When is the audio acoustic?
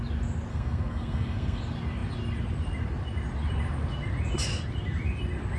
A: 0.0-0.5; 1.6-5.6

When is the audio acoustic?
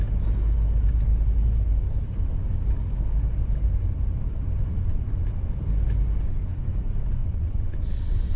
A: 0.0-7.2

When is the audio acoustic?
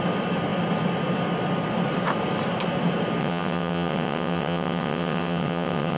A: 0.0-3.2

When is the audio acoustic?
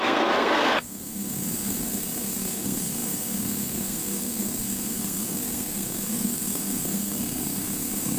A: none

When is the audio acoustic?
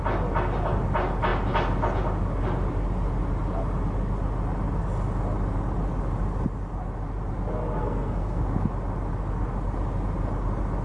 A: 0.0-7.8; 8.4-10.8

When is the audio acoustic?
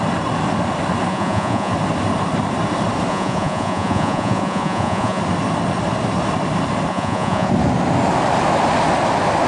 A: 0.0-1.1; 1.7-3.1; 5.2-6.9; 7.5-9.5